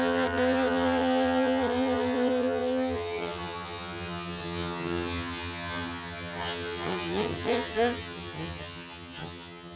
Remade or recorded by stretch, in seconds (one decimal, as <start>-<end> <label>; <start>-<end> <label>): 0.0-9.8 remade